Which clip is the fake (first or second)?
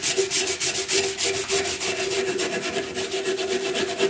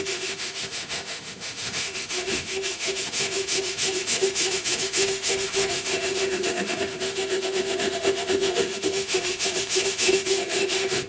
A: second